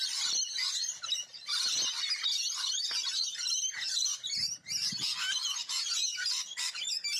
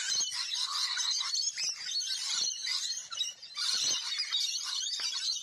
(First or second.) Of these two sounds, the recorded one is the first